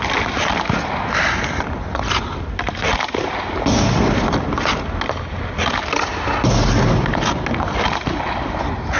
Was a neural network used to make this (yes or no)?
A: no